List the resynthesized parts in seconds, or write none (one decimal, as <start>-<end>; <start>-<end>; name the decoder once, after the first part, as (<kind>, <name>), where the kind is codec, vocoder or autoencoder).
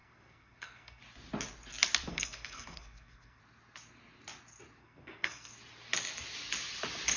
0.0-1.0 (codec, SNAC); 2.1-3.4; 4.8-5.5